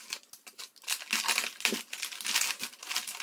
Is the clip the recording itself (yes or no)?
yes